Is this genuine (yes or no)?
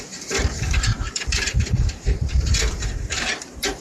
no